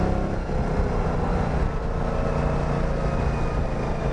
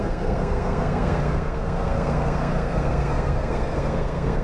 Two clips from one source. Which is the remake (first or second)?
second